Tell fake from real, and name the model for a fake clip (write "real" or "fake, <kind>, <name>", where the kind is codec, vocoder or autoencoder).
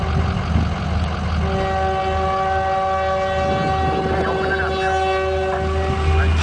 real